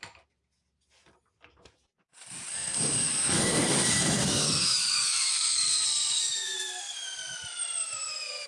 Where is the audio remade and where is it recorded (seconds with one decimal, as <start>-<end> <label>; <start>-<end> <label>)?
0.0-2.5 recorded; 2.5-6.2 remade; 6.2-8.5 recorded